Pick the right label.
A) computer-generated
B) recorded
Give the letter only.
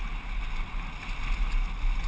B